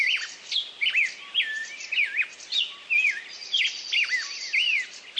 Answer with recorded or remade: recorded